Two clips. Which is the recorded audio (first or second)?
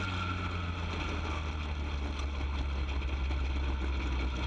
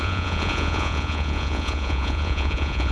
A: first